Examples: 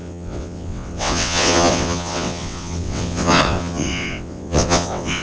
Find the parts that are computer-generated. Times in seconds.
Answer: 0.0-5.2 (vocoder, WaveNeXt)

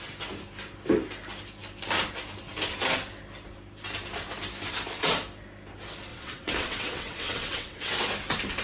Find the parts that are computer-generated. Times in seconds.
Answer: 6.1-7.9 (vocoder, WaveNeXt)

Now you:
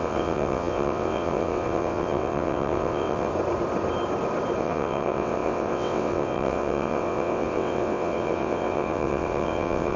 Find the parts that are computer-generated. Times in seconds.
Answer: 0.0-3.3 (vocoder, WaveNeXt); 4.6-10.0

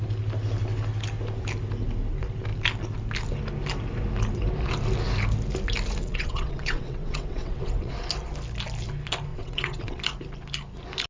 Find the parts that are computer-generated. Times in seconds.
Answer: 6.0-7.9 (vocoder, WaveNeXt); 9.3-10.0

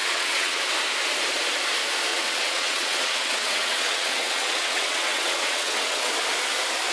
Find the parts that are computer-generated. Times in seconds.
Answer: 0.0-0.6 (vocoder, WaveNeXt); 2.1-6.1

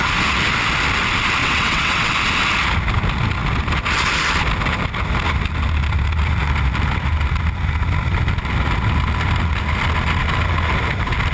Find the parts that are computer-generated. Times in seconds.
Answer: 1.4-2.1 (vocoder, WaveNeXt)

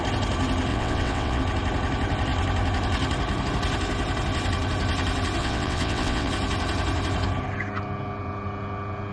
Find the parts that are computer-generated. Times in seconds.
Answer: 0.7-1.4 (vocoder, WaveNeXt); 5.4-6.3

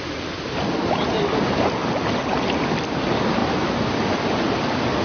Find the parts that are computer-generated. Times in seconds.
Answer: none